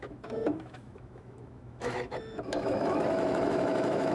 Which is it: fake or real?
fake